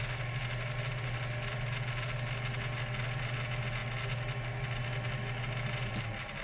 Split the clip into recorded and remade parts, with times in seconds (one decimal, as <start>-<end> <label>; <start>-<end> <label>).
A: 0.0-6.4 recorded